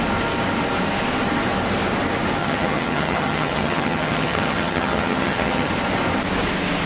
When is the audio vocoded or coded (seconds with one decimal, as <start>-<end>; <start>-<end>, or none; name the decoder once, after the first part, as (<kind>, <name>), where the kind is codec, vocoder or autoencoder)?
2.4-5.7 (vocoder, HiFi-GAN)